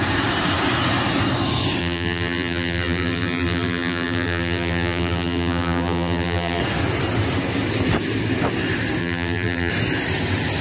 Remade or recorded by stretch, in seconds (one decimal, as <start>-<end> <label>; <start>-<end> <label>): 0.0-1.8 recorded; 1.8-6.6 remade; 6.6-9.0 recorded; 9.0-9.7 remade; 9.7-10.6 recorded